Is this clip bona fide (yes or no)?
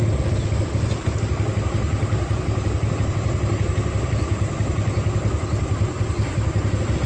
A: yes